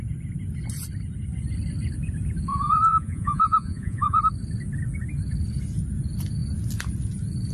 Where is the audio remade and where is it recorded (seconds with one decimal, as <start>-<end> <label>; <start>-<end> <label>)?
0.0-2.5 recorded; 2.5-4.2 remade; 4.2-7.5 recorded

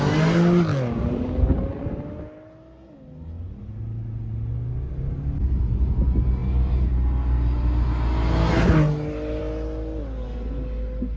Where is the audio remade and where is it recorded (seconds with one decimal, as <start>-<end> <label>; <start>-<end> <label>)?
0.0-11.2 recorded

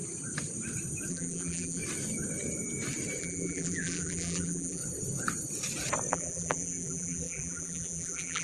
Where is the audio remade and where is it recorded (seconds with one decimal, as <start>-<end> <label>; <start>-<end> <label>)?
0.0-1.1 recorded; 1.1-1.8 remade; 1.8-3.2 recorded; 3.2-4.8 remade; 4.8-6.1 recorded; 6.1-8.4 remade

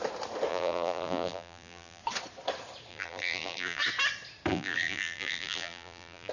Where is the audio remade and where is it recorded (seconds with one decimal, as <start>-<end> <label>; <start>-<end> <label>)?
0.0-0.5 recorded; 0.5-2.0 remade; 2.0-2.9 recorded; 2.9-3.8 remade; 3.8-4.5 recorded; 4.5-6.3 remade

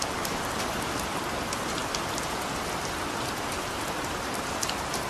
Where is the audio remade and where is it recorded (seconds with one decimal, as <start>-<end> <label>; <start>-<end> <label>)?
0.0-5.1 recorded

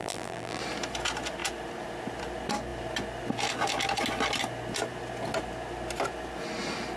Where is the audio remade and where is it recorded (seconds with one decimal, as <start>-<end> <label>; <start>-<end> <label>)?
0.0-0.6 remade; 0.6-7.0 recorded

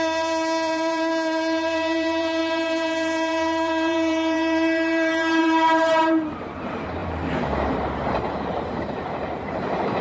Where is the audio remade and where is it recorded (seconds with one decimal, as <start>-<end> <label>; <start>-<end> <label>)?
0.0-10.0 remade

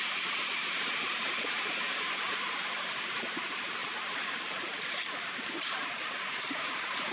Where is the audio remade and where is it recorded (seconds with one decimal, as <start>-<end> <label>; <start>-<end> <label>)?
0.0-7.1 remade